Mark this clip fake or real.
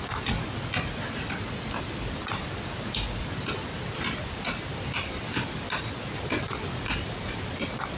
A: real